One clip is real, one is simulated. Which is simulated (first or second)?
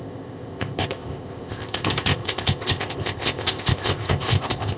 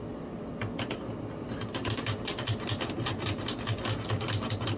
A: first